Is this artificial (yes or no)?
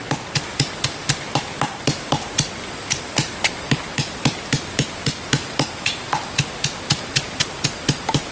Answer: no